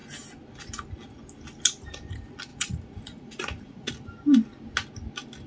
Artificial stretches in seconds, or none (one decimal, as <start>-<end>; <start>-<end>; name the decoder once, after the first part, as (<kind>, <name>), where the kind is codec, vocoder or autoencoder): 2.5-3.9 (vocoder, Vocos)